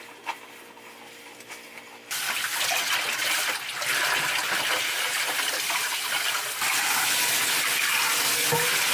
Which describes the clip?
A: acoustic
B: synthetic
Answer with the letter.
A